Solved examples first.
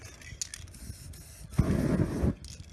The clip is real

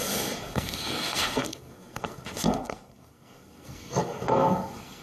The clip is fake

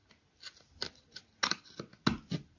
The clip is real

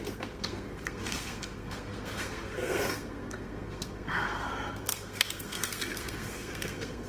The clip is fake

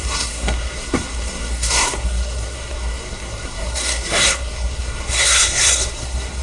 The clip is fake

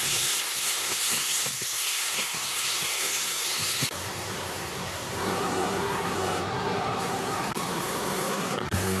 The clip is fake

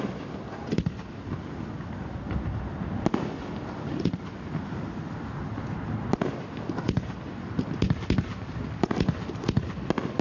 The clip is real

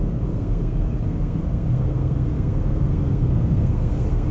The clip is fake